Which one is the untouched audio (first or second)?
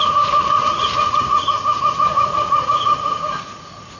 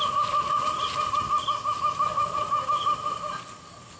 second